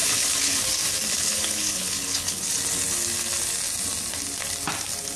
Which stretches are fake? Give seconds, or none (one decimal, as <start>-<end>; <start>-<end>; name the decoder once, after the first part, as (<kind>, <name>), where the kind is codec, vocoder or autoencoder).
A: 0.0-0.6 (codec, HILCodec); 1.1-2.4